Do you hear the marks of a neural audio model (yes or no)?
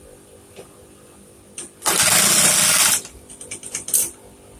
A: no